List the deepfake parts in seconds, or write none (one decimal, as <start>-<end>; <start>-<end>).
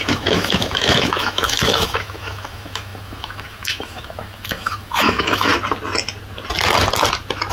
0.0-5.5